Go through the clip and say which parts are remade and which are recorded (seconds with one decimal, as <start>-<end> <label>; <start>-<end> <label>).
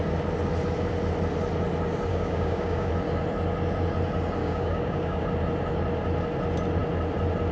0.0-2.1 recorded; 2.1-2.9 remade; 2.9-4.4 recorded; 4.4-5.2 remade; 5.2-7.5 recorded